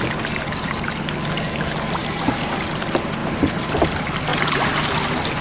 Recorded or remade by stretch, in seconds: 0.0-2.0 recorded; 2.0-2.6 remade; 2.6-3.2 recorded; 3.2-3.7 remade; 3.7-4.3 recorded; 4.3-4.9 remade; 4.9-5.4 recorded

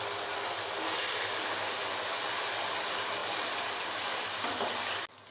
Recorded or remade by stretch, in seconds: 0.0-3.2 recorded; 3.2-4.0 remade; 4.0-5.3 recorded

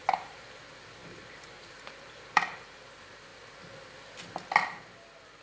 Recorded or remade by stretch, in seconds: 0.0-0.6 remade; 0.6-1.0 recorded; 1.0-2.8 remade; 2.8-5.4 recorded

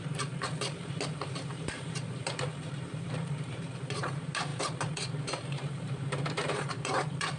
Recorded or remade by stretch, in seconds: 0.0-4.5 remade; 4.5-5.2 recorded; 5.2-7.4 remade

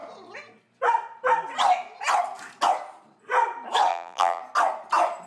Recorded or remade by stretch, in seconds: 0.0-3.9 recorded; 3.9-4.4 remade; 4.4-5.3 recorded

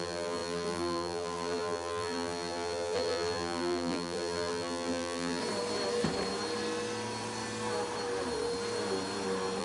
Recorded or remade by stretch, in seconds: 0.0-5.4 remade; 5.4-9.6 recorded

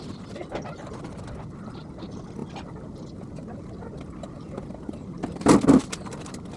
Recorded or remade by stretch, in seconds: 0.0-2.4 recorded; 2.4-6.6 remade